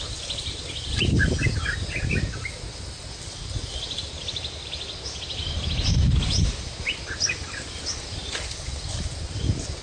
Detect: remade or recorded recorded